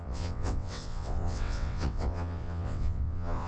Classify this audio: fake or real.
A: fake